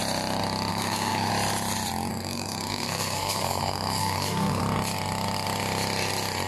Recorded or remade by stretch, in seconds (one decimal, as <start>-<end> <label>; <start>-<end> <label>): 0.0-0.7 recorded; 0.7-1.3 remade; 1.3-2.1 recorded; 2.1-4.6 remade; 4.6-6.5 recorded